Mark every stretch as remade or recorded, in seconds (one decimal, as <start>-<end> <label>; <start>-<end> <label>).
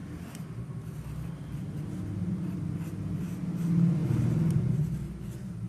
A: 0.0-5.7 recorded